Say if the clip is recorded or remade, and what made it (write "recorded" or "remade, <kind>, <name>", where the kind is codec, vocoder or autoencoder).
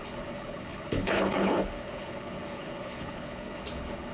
remade, codec, HILCodec